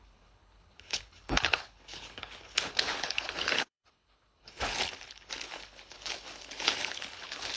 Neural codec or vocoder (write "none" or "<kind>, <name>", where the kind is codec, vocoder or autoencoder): codec, HILCodec